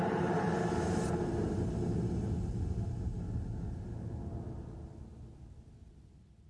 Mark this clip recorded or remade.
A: recorded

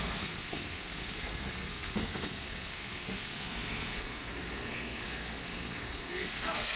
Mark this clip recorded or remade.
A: remade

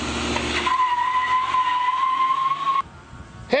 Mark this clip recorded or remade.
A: recorded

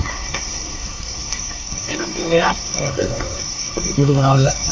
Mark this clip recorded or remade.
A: remade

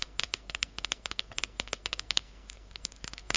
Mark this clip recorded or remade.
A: remade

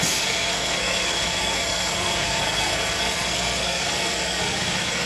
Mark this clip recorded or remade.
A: remade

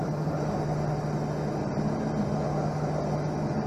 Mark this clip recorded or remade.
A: recorded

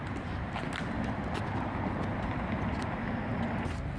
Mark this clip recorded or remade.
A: recorded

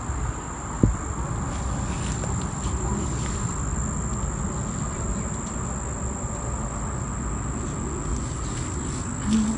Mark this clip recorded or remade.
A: recorded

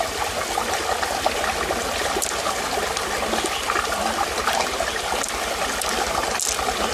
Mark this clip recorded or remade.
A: recorded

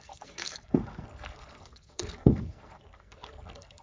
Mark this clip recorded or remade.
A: remade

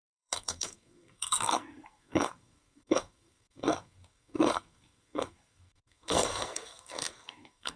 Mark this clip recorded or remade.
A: remade